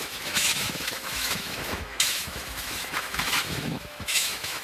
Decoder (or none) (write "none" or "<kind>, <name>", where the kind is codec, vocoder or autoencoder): autoencoder, DAC-VAE